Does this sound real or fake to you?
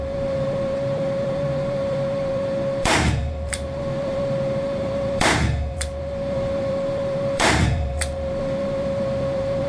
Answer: fake